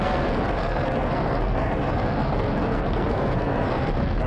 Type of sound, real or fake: fake